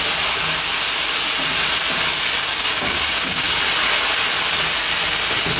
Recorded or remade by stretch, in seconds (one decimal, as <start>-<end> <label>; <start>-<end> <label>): 0.0-2.4 recorded; 2.4-3.6 remade; 3.6-5.6 recorded